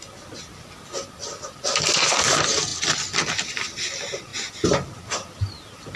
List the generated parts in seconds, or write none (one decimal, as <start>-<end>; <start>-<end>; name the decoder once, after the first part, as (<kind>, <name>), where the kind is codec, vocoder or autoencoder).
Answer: none

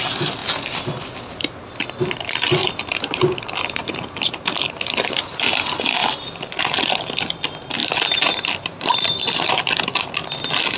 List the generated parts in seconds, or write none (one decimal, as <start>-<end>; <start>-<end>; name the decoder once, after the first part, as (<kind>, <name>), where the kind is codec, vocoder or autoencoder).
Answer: 7.8-8.9 (vocoder, BigVGAN v2)

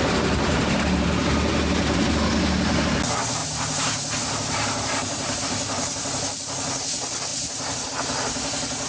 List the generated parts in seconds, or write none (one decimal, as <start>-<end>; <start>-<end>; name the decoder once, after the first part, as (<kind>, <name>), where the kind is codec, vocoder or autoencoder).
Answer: 0.0-1.1 (vocoder, BigVGAN v2); 3.4-5.4; 7.3-7.9

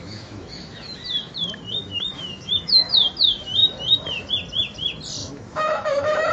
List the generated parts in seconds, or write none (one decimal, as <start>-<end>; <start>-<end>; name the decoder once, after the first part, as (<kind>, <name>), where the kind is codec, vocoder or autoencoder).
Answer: 0.0-1.0 (autoencoder, DAC-VAE); 1.8-2.9; 5.2-6.3

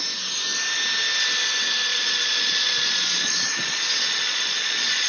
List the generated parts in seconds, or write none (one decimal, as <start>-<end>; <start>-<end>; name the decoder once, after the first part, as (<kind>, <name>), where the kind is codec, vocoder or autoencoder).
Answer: 1.9-5.1 (vocoder, Vocos)

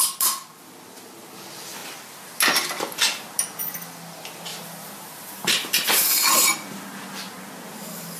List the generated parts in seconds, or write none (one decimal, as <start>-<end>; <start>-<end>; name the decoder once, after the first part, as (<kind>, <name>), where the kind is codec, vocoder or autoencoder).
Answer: none

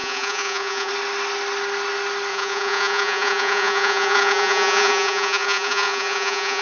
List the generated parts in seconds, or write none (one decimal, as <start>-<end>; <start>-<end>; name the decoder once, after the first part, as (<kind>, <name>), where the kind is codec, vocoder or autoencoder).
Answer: 0.0-0.9 (vocoder, Vocos); 2.3-6.6